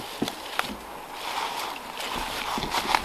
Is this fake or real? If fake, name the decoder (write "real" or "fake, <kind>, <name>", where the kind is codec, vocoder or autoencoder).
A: real